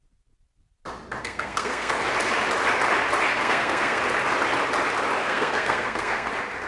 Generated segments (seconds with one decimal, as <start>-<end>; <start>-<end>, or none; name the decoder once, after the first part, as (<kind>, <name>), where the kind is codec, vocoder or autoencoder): 1.2-1.9 (codec, SNAC); 3.4-4.0; 5.2-6.3